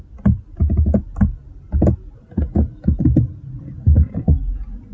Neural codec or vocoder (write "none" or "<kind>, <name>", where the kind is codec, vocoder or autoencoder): none